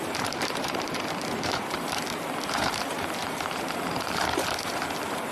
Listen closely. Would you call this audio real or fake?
fake